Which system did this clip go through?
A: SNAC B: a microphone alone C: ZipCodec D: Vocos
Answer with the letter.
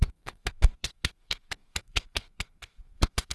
A